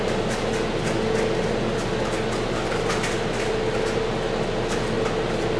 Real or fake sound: real